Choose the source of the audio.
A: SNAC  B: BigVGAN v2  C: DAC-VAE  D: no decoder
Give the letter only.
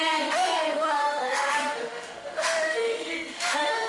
C